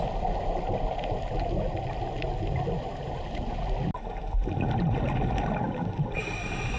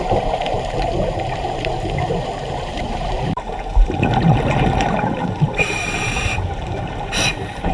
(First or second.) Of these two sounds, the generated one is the second